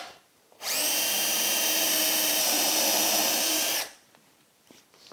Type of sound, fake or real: fake